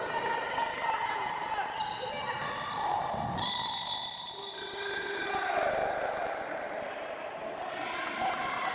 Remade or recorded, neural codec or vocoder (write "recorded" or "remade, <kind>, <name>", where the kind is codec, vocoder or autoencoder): recorded